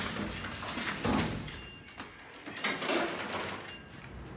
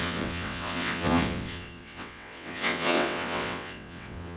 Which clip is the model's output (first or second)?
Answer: second